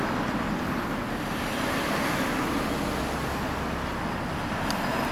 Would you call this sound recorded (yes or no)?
yes